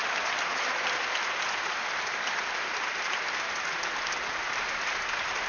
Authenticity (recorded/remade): recorded